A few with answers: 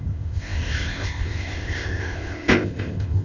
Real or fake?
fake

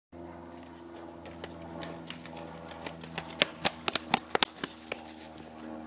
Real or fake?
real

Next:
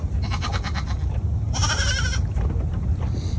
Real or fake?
real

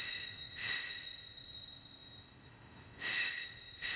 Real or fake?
fake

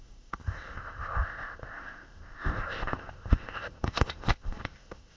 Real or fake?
fake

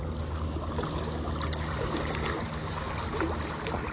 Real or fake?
real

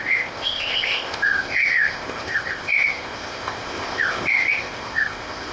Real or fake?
fake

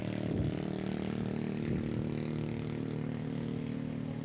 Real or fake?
real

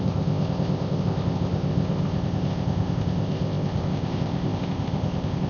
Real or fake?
fake